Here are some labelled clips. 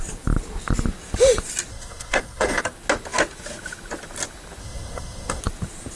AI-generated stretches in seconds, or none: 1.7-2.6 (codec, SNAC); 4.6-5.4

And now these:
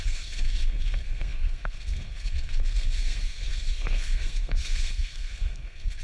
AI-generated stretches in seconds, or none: 0.0-6.0 (codec, SNAC)

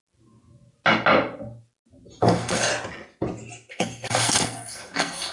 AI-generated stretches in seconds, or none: 2.2-2.7 (codec, SNAC); 3.7-5.3

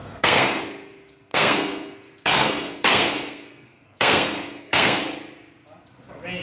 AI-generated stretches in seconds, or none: 0.0-0.6 (codec, SNAC); 1.3-5.0

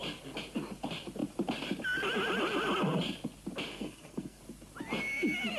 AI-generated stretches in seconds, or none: 3.7-4.4 (codec, SNAC)

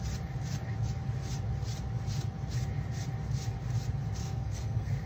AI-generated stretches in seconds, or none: 4.2-5.1 (codec, SNAC)

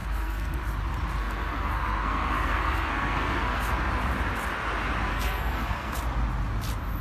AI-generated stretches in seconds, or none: 0.0-0.6 (codec, SNAC); 1.2-3.9; 5.1-6.0